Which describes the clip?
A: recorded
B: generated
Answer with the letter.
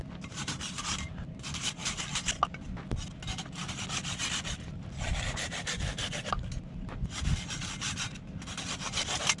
A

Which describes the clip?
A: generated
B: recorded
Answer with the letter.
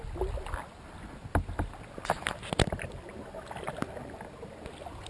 B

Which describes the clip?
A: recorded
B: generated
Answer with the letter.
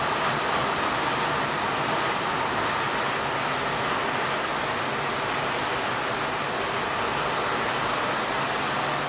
A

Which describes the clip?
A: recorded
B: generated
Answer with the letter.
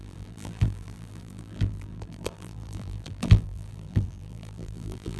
B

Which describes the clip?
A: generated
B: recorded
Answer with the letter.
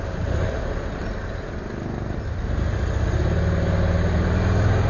B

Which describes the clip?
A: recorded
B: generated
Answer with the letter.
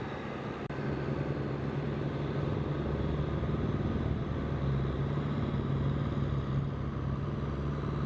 A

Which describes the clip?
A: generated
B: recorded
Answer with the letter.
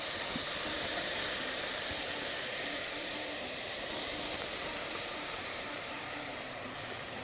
A